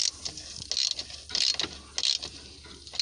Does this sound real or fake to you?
real